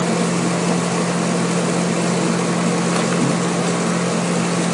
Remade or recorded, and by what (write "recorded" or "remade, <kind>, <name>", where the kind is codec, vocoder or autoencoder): recorded